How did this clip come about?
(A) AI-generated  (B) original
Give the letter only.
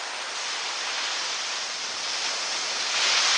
B